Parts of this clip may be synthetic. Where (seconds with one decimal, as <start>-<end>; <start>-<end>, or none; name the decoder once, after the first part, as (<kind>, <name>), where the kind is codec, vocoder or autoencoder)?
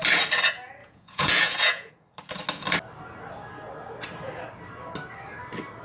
0.8-1.9 (vocoder, Vocos)